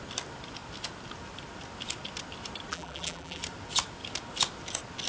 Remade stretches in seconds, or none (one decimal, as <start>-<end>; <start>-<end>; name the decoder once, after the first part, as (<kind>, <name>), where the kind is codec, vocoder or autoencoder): 2.7-3.4 (vocoder, BigVGAN v2)